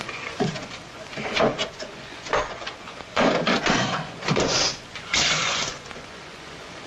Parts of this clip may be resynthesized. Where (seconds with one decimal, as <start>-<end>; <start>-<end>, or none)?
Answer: 0.0-6.9